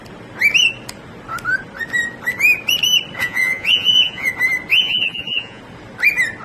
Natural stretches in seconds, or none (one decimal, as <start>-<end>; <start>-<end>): 0.0-3.2; 4.3-4.7; 5.6-6.4

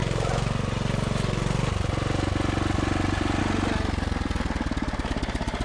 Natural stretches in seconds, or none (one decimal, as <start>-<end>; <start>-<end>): 0.0-5.6